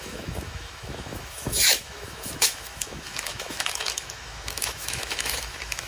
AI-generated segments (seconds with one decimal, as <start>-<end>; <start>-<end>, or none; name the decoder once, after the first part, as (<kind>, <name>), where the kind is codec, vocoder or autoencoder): 0.0-5.9 (autoencoder, DAC-VAE)